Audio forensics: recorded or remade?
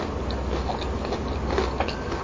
recorded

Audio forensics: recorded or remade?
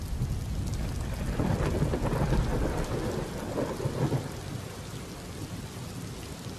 recorded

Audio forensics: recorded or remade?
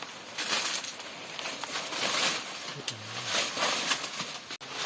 recorded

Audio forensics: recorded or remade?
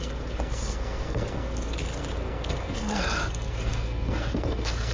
remade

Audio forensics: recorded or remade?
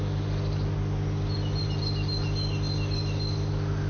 recorded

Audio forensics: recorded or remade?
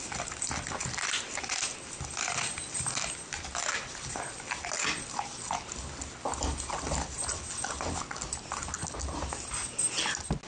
recorded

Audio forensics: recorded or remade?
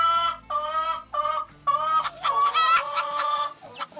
remade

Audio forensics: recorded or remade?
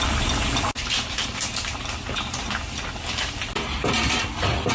recorded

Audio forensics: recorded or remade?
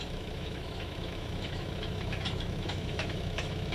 remade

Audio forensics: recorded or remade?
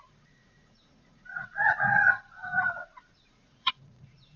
remade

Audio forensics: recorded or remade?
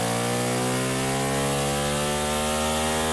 recorded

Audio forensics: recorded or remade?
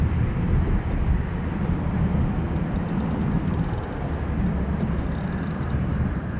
recorded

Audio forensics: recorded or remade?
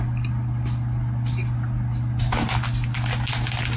recorded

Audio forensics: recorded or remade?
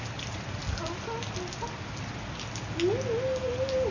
recorded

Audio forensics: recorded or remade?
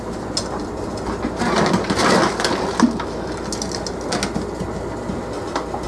recorded